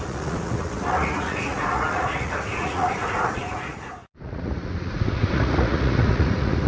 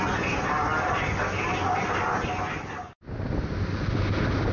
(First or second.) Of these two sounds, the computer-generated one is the first